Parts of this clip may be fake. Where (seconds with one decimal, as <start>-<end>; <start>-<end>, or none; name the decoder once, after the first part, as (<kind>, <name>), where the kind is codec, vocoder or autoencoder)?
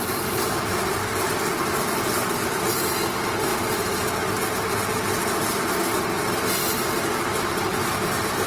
1.5-2.7 (vocoder, BigVGAN v2); 7.7-8.5